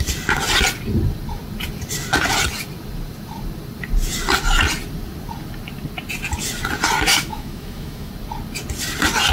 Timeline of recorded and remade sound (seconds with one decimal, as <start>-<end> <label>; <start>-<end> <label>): 0.0-7.1 recorded; 7.1-8.1 remade; 8.1-9.3 recorded